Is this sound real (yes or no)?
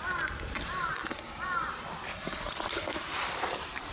no